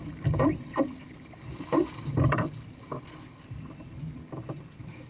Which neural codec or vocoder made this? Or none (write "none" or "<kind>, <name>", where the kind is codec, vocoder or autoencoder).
vocoder, BigVGAN v2